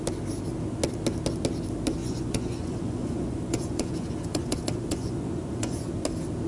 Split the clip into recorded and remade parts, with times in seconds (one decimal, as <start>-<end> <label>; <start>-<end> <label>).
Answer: 0.0-2.0 recorded; 2.0-5.9 remade; 5.9-6.5 recorded